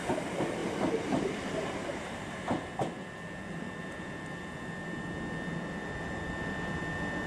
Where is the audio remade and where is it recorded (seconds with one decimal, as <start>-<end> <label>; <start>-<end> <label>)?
0.0-0.6 recorded; 0.6-2.3 remade; 2.3-7.3 recorded